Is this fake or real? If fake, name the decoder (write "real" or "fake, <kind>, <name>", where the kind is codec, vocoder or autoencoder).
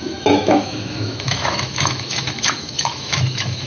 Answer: fake, autoencoder, DAC-VAE